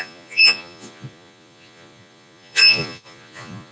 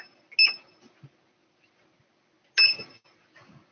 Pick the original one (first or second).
second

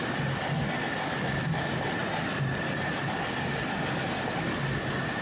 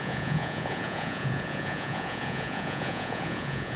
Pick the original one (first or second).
first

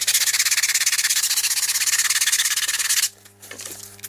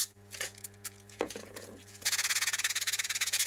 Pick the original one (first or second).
first